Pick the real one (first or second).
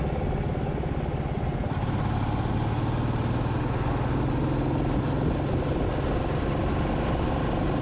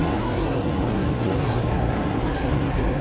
first